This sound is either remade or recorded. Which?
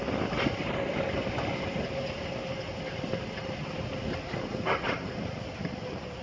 remade